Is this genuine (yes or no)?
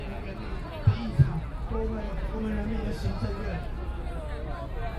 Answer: yes